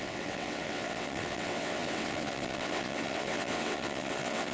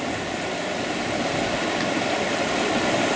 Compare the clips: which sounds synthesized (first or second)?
first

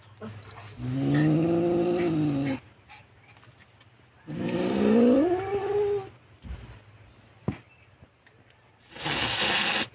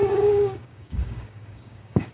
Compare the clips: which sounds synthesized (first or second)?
second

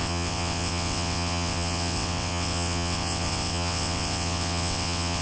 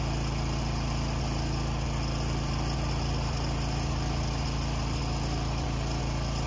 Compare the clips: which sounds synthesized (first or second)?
first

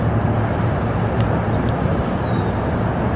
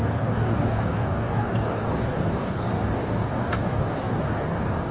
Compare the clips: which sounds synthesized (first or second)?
second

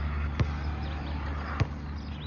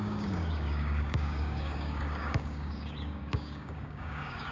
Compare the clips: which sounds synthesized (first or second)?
second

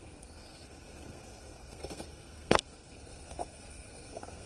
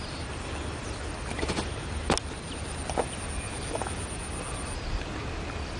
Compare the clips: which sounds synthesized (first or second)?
first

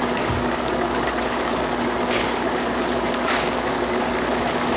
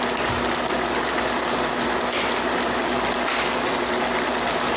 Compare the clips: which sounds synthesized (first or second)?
first